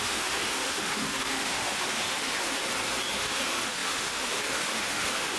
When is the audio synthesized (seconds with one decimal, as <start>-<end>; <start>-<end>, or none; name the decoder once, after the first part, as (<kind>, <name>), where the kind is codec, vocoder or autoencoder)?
0.0-2.6 (autoencoder, DAC-VAE); 3.1-5.4